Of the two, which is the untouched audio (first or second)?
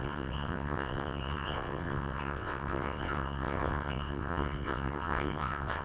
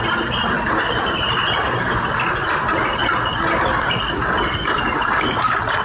second